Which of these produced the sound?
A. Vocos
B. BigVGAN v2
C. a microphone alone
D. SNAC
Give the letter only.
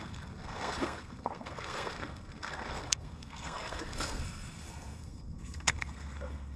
D